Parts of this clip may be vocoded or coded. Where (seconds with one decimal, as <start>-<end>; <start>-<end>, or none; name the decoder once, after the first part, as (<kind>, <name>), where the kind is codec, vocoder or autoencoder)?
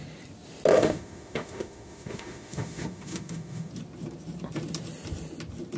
0.7-3.7 (autoencoder, DAC-VAE)